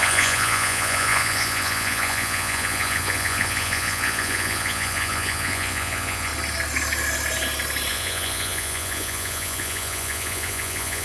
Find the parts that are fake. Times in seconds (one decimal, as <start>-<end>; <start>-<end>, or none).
0.0-6.3; 7.9-11.0